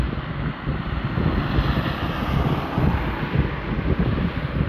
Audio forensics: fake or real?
real